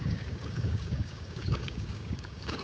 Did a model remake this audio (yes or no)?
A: yes